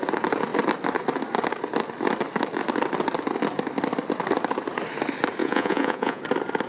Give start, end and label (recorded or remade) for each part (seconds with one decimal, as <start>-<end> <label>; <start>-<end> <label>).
0.0-5.4 recorded; 5.4-6.2 remade; 6.2-6.7 recorded